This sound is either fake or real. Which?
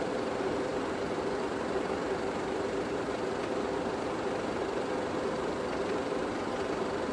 fake